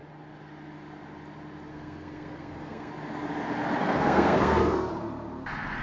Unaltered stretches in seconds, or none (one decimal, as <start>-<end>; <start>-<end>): 0.0-1.7; 2.9-3.8; 4.9-5.8